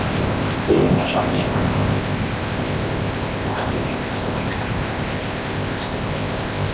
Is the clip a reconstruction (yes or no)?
yes